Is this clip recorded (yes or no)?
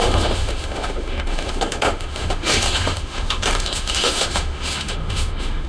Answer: no